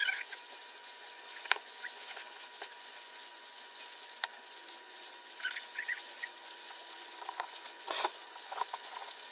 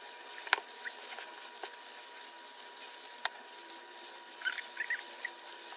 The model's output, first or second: first